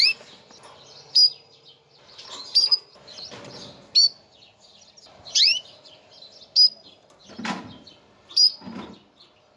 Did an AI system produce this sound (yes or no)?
no